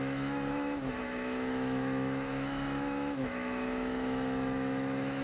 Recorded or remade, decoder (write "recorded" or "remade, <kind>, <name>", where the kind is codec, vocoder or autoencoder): remade, autoencoder, DAC-VAE